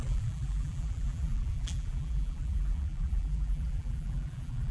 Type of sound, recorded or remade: remade